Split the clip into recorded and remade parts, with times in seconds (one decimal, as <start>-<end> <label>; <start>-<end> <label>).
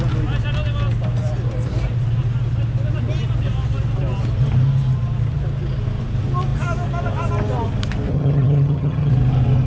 0.0-8.1 recorded; 8.1-9.1 remade; 9.1-9.7 recorded